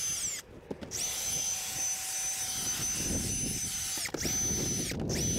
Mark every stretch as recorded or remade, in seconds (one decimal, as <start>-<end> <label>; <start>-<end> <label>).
0.0-1.1 recorded; 1.1-1.8 remade; 1.8-5.4 recorded